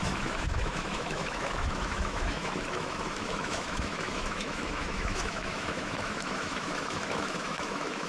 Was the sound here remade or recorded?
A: remade